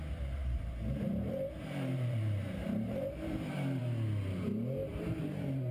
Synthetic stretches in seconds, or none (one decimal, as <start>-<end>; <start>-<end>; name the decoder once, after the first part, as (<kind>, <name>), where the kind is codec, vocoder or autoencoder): 0.4-3.8 (vocoder, BigVGAN v2); 4.8-5.7

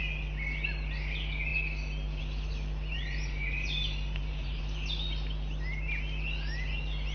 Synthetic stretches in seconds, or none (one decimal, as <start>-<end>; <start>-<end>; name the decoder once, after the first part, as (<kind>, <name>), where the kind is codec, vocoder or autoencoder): 3.0-4.6 (vocoder, BigVGAN v2)

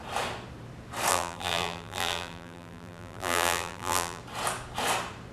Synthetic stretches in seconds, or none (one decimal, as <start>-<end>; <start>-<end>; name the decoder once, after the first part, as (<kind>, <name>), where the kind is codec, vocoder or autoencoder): 1.1-4.2 (vocoder, BigVGAN v2)

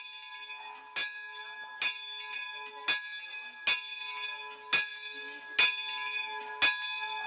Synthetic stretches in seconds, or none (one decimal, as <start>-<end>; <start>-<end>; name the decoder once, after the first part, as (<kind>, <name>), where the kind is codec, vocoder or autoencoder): none